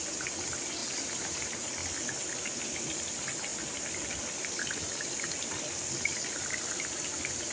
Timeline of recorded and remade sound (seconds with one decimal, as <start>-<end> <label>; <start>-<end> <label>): 0.0-3.5 recorded; 3.5-6.9 remade; 6.9-7.5 recorded